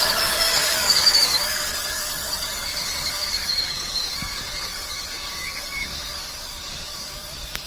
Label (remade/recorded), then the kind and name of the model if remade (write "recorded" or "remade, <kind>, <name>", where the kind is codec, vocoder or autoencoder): remade, codec, DAC